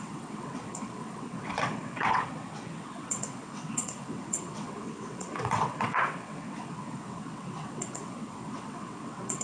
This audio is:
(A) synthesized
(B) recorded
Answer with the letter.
A